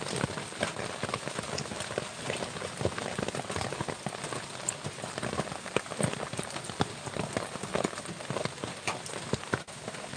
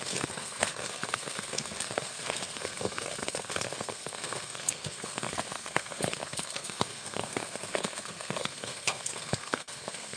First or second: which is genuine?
first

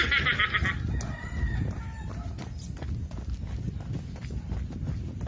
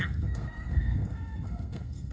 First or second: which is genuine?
first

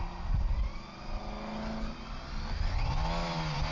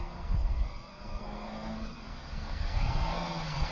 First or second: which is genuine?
first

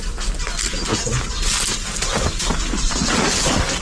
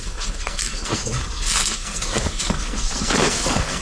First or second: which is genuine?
first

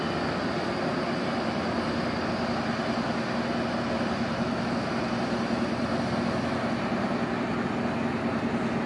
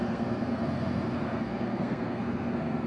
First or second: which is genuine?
first